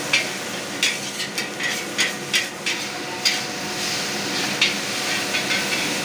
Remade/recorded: recorded